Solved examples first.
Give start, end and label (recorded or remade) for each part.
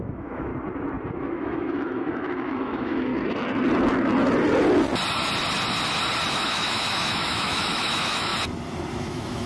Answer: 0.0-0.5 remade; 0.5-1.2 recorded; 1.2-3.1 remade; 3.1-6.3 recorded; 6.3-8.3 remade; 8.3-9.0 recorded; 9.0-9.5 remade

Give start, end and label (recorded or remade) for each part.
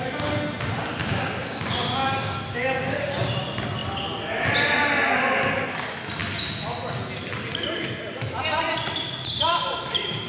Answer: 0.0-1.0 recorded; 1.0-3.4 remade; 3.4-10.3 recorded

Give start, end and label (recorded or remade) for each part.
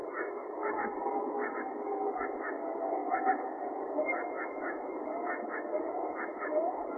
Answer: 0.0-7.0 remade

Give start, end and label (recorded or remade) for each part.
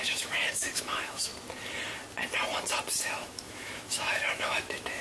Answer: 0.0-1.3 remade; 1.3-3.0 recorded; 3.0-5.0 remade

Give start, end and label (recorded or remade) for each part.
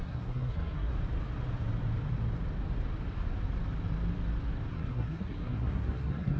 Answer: 0.0-0.9 remade; 0.9-4.7 recorded; 4.7-6.4 remade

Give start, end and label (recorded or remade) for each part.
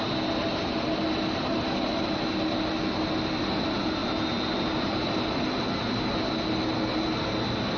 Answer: 0.0-7.8 recorded